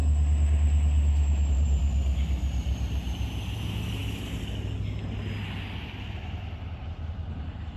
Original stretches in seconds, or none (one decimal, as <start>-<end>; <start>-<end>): 0.0-1.5; 4.0-6.8